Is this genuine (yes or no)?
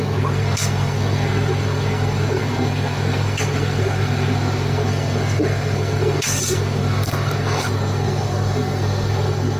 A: no